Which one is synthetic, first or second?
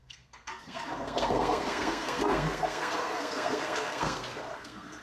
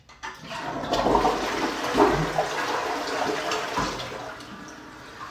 first